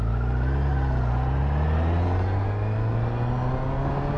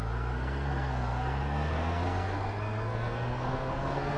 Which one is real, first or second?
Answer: first